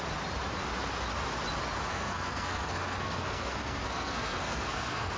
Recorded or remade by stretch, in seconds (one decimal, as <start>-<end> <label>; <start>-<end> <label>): 0.0-1.9 recorded; 1.9-5.2 remade